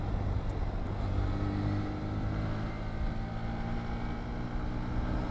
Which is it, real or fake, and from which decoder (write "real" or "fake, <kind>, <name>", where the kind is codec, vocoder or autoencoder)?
real